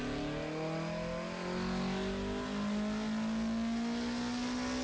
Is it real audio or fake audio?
real